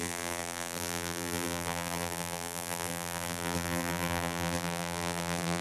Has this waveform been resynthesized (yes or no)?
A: yes